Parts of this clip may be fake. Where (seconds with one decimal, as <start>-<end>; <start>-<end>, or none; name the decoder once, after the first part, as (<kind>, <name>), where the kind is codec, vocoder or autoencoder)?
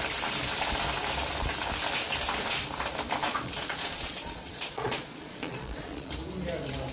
3.3-6.1 (vocoder, Vocos)